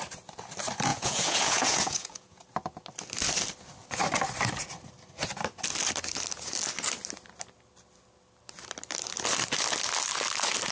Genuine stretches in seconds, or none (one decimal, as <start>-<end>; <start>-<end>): 0.0-0.9; 2.4-10.7